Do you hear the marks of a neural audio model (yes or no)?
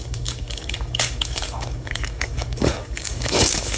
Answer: yes